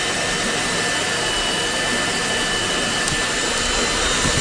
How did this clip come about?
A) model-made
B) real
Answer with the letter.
B